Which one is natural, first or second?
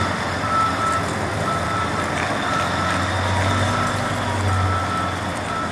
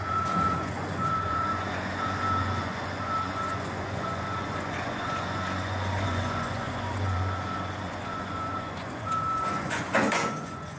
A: first